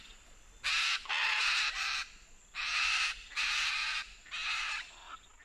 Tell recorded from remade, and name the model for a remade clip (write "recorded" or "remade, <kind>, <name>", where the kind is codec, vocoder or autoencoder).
recorded